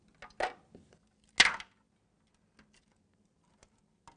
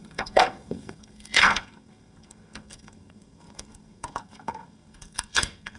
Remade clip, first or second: second